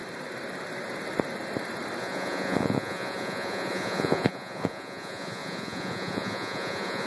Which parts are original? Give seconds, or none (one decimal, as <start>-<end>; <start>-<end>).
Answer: 0.0-2.0